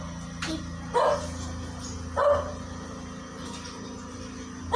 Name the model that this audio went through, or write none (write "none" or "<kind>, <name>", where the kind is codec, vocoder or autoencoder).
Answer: none